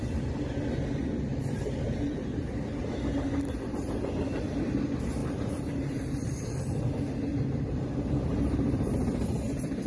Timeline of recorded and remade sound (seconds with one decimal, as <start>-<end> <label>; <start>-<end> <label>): 0.0-0.5 remade; 0.5-1.3 recorded; 1.3-2.8 remade; 2.8-5.2 recorded; 5.2-6.9 remade; 6.9-9.9 recorded